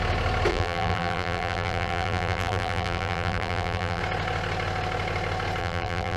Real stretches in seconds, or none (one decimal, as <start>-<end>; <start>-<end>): 0.0-0.5; 4.0-5.6